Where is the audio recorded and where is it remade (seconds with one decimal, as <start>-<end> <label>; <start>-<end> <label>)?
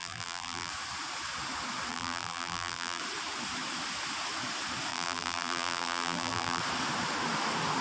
0.0-0.7 remade; 0.7-1.9 recorded; 1.9-3.0 remade; 3.0-4.9 recorded; 4.9-6.6 remade; 6.6-7.8 recorded